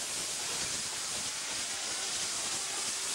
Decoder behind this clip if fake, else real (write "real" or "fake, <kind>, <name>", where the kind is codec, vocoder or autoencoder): real